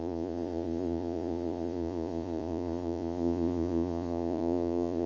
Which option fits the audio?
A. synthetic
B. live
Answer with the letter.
A